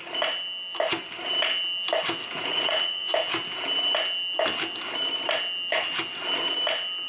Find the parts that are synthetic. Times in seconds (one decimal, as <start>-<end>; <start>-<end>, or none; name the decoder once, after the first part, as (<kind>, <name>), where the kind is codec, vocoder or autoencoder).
2.2-3.1 (vocoder, Vocos)